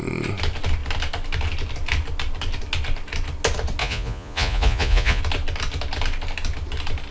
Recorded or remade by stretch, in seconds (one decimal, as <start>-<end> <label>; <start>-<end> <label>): 0.0-3.8 recorded; 3.8-5.2 remade; 5.2-7.1 recorded